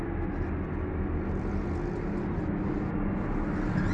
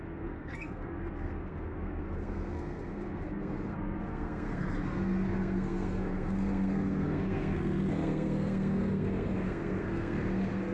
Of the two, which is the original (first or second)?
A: first